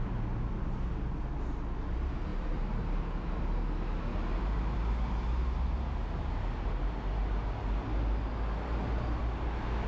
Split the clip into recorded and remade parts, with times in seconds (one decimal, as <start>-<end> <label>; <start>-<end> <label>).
0.0-9.9 recorded